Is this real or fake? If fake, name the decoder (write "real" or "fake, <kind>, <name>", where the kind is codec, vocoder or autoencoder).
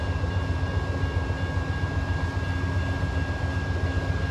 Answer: real